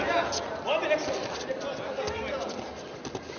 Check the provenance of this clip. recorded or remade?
recorded